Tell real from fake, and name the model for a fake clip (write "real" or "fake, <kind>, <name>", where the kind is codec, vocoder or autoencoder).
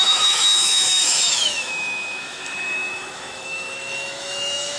fake, autoencoder, DAC-VAE